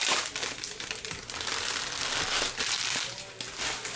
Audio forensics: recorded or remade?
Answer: recorded